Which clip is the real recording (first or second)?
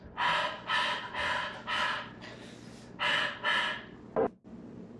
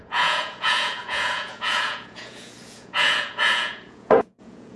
first